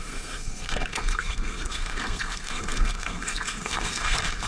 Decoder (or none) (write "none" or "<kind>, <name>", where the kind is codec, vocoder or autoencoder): codec, SNAC